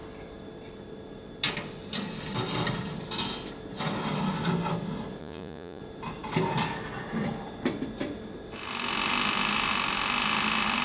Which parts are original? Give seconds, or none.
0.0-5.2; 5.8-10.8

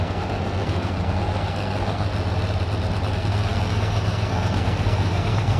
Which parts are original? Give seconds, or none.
2.1-3.1